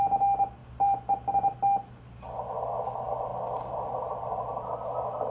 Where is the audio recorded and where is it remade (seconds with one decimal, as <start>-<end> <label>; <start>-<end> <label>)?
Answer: 0.0-0.6 recorded; 0.6-1.3 remade; 1.3-5.3 recorded